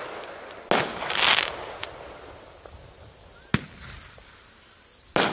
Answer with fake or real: real